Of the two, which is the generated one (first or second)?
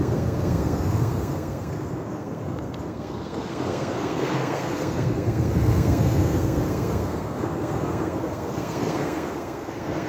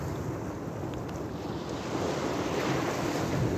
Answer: first